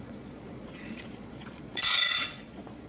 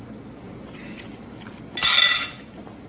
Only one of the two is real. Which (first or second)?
second